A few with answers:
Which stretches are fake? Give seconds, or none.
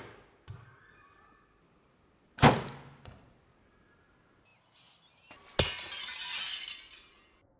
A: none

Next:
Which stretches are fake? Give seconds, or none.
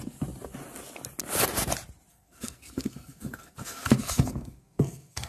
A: 2.1-5.3 (codec, SNAC)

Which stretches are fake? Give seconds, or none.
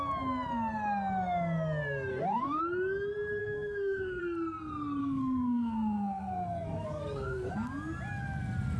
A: 2.1-2.6 (codec, SNAC); 3.4-4.2; 5.0-7.5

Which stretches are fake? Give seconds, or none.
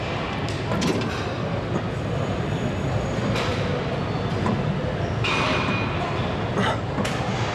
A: 3.5-4.7 (vocoder, BigVGAN v2)